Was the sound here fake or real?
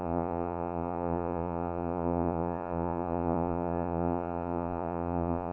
fake